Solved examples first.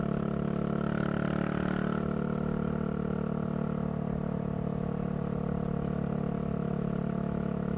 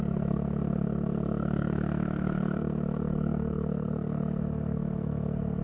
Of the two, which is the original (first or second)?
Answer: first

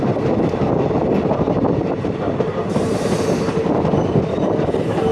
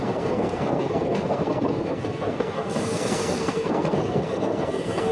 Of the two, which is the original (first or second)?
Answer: first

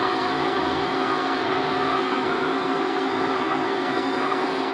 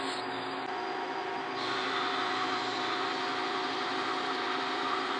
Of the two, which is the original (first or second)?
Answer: second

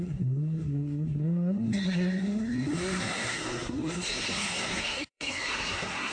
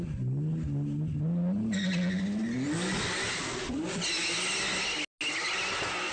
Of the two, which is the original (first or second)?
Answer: second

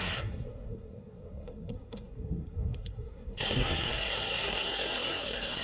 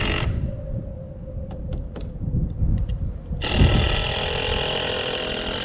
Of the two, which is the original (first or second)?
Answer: second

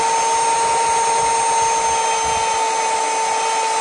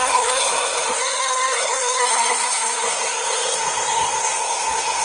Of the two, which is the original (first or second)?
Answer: first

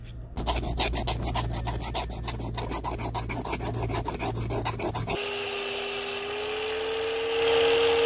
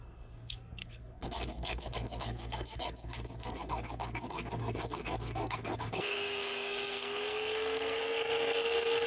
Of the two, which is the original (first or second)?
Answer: first